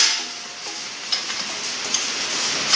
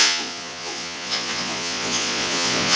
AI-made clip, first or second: second